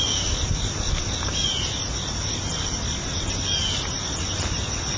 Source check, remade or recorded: recorded